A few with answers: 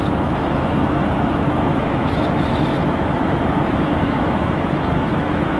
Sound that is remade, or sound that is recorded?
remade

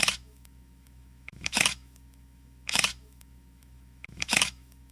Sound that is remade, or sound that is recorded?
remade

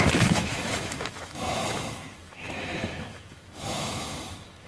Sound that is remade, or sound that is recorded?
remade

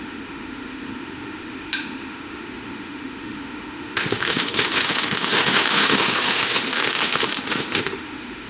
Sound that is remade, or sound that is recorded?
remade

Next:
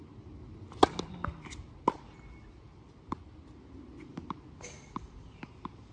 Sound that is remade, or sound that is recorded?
recorded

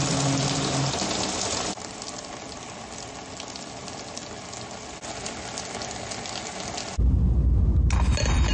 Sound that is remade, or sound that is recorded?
recorded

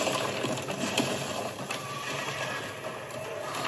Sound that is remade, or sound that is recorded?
recorded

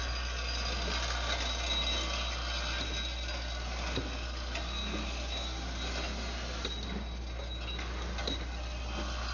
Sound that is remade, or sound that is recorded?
recorded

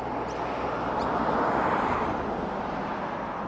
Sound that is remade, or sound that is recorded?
recorded